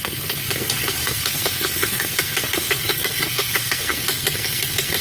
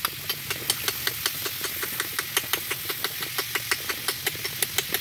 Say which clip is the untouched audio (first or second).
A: second